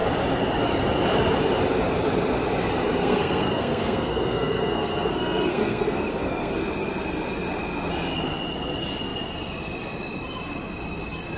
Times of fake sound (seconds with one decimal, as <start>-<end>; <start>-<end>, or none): 3.0-6.5